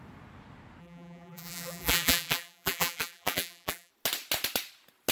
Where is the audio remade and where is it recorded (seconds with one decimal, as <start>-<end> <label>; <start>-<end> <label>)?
0.0-0.8 recorded; 0.8-3.9 remade; 3.9-5.1 recorded